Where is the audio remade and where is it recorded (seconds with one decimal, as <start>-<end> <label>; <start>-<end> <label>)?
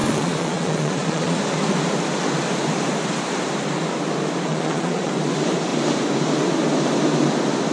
0.0-1.4 remade; 1.4-4.5 recorded; 4.5-5.1 remade; 5.1-7.7 recorded